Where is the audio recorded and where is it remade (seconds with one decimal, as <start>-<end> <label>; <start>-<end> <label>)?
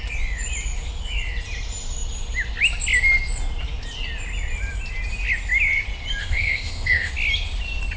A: 0.0-6.2 recorded; 6.2-7.1 remade; 7.1-8.0 recorded